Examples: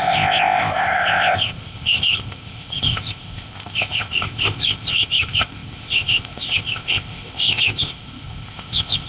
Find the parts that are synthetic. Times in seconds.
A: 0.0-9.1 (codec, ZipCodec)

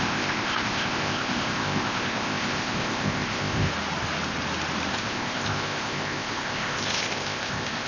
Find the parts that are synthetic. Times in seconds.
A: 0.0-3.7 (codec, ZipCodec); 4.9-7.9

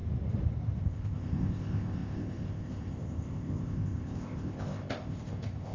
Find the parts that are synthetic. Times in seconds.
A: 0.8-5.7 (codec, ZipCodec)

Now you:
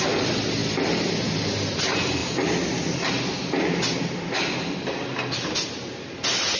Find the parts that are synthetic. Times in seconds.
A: none

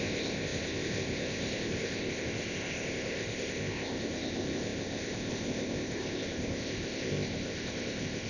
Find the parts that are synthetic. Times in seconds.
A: 0.0-8.3 (codec, ZipCodec)

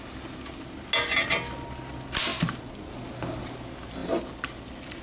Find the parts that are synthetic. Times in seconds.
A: none